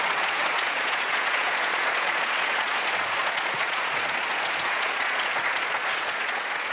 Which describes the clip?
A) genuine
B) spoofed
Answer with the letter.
B